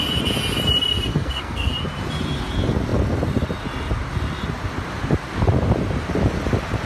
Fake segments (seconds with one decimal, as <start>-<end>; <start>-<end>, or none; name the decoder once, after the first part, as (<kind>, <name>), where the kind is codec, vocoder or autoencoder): 1.1-1.7 (codec, SNAC)

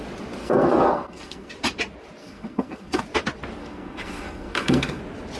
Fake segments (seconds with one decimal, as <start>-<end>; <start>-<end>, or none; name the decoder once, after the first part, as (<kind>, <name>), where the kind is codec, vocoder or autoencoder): 0.4-1.5 (codec, SNAC); 2.2-3.0; 3.6-5.0

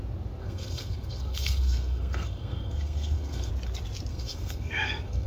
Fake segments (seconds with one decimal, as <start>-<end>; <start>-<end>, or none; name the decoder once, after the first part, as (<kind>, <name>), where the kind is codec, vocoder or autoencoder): 0.4-3.5 (codec, SNAC); 4.1-5.3

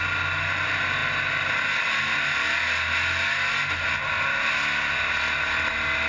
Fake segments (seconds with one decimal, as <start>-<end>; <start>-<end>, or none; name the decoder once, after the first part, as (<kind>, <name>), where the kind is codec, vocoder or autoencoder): none

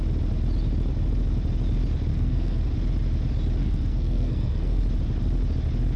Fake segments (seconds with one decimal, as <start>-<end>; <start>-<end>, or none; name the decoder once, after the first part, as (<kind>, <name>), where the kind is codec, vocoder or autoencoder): 2.1-2.6 (codec, SNAC); 3.6-4.8

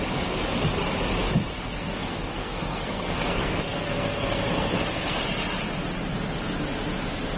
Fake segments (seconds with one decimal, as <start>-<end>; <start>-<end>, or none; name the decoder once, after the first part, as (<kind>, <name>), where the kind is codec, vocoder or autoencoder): 1.5-5.2 (codec, SNAC)